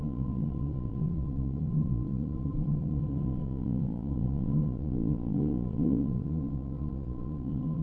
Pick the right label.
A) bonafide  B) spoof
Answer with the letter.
B